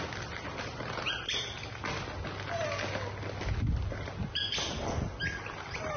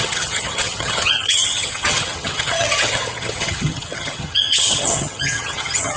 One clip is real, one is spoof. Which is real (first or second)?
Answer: first